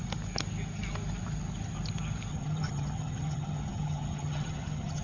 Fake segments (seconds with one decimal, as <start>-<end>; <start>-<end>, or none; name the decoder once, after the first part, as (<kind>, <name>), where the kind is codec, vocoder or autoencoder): 2.3-5.0 (vocoder, HiFi-GAN)

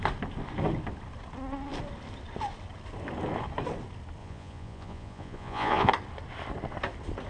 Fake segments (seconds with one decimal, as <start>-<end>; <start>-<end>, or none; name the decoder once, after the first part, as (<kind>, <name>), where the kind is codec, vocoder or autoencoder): 4.2-5.9 (vocoder, Vocos)

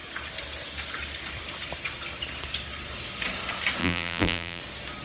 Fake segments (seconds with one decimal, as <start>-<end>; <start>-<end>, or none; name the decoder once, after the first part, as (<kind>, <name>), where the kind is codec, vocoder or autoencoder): 3.8-4.6 (vocoder, BigVGAN v2)